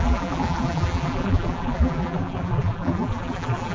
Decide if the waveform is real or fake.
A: fake